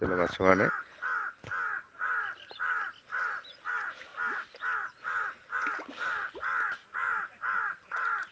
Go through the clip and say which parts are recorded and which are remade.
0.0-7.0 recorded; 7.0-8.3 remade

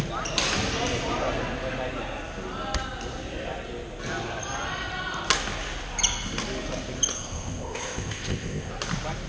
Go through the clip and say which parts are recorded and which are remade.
0.0-7.1 recorded; 7.1-8.7 remade; 8.7-9.3 recorded